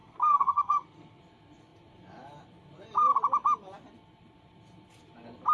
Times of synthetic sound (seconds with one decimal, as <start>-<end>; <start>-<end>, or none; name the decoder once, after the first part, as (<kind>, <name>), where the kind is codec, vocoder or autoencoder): 0.0-1.2 (codec, SNAC)